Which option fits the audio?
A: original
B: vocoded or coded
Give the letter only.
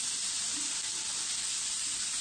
A